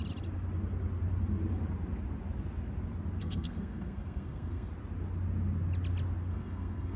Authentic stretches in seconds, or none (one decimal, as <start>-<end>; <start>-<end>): 0.0-3.2; 4.7-6.3